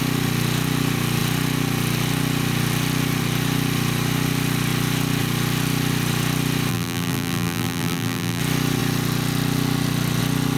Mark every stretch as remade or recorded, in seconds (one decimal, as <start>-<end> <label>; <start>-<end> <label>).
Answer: 0.0-6.7 recorded; 6.7-8.4 remade; 8.4-10.6 recorded